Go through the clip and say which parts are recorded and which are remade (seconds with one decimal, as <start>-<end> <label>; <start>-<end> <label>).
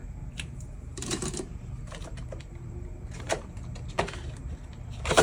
0.0-5.2 remade